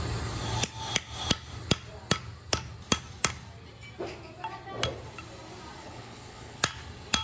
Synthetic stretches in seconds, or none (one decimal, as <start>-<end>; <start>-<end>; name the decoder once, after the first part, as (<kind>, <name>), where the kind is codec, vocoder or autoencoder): 5.8-6.6 (codec, HILCodec)